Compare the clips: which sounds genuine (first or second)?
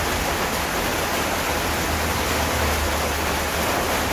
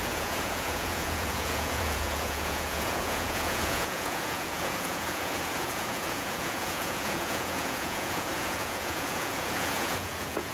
first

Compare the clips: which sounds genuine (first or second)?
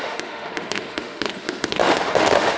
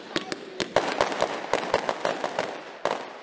second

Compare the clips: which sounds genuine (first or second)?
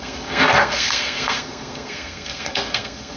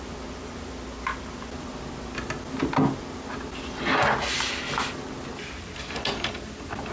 second